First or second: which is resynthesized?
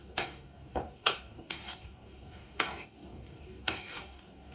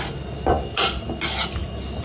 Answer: first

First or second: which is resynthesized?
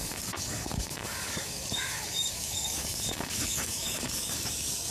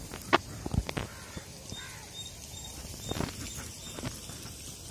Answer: first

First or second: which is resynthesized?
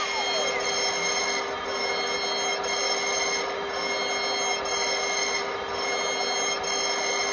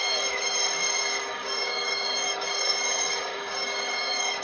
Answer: second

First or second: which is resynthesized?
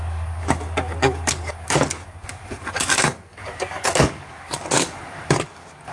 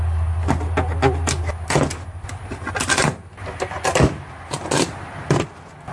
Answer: first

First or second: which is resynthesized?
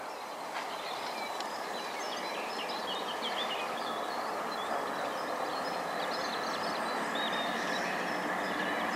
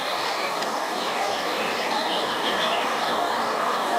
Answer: second